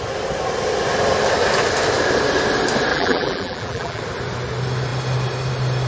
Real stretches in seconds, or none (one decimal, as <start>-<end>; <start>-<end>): 0.0-2.9; 4.0-5.9